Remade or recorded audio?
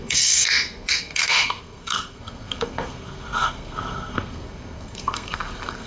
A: remade